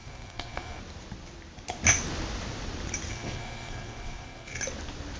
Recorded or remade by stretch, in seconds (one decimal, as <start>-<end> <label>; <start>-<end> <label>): 0.0-0.8 remade; 0.8-3.1 recorded; 3.1-4.6 remade; 4.6-5.2 recorded